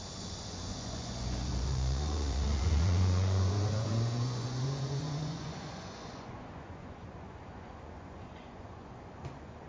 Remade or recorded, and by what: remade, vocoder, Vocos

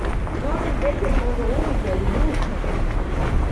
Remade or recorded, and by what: recorded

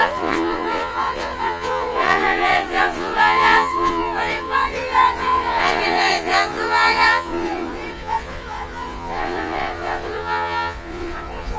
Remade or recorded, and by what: remade, vocoder, Vocos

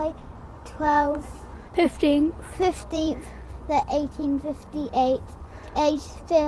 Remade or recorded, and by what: remade, vocoder, Vocos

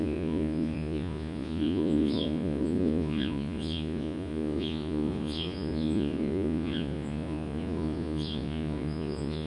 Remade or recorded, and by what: remade, vocoder, Vocos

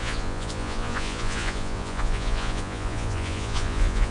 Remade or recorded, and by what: remade, vocoder, Vocos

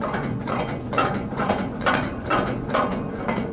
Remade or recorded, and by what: remade, vocoder, Vocos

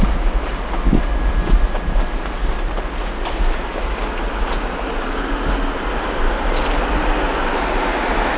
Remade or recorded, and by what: recorded